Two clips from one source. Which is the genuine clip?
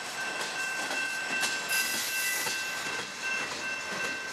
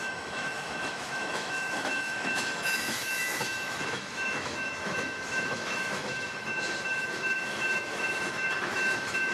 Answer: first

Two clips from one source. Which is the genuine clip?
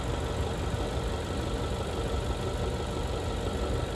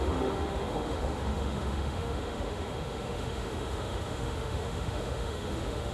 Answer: first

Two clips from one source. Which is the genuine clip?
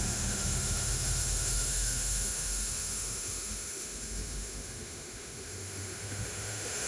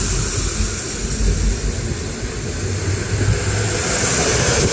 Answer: second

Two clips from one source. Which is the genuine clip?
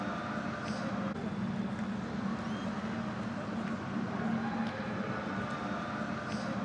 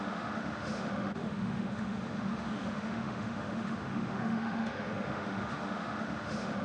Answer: first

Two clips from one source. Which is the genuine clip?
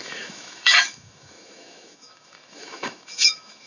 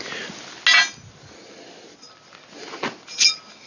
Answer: second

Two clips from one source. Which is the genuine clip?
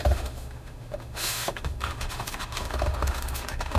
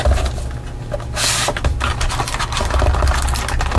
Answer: second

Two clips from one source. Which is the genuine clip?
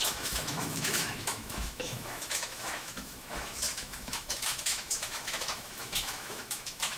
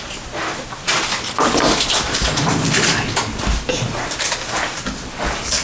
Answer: second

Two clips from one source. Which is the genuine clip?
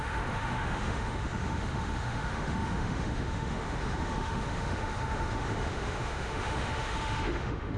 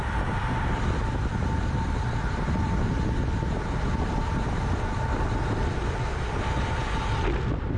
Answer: second